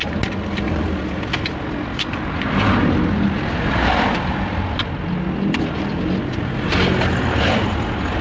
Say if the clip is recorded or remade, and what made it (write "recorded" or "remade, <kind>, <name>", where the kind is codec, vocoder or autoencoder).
recorded